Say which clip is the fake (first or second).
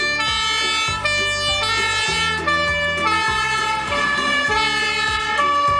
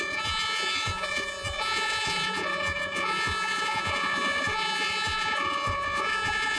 second